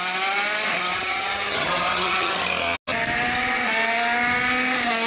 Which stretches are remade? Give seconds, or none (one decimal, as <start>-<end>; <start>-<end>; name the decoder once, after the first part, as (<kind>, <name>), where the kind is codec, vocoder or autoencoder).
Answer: 0.9-2.3 (vocoder, HiFi-GAN)